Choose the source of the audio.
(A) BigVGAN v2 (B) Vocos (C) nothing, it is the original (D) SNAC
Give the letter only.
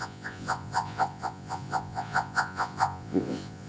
B